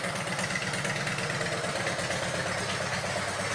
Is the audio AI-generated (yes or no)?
yes